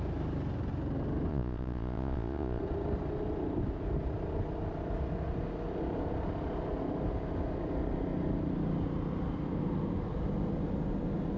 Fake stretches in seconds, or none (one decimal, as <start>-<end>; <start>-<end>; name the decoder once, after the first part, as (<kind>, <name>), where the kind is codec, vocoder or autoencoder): 1.3-2.6 (vocoder, Vocos)